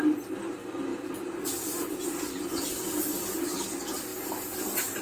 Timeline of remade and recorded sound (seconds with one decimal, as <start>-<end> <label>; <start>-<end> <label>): 0.0-5.0 recorded